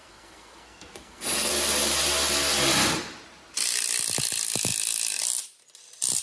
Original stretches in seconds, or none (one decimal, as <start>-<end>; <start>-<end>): 1.5-6.2